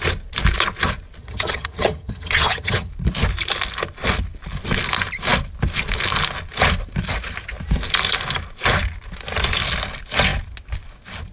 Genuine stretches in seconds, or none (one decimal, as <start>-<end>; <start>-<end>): 0.0-1.2; 2.9-11.3